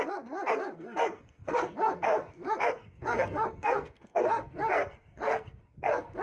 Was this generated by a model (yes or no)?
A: yes